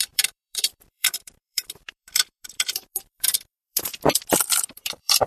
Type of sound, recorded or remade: remade